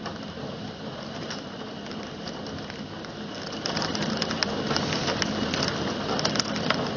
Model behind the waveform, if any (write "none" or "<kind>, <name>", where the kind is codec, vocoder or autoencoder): none